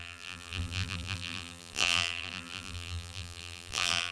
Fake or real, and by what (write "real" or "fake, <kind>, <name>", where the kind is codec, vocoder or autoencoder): fake, vocoder, BigVGAN v2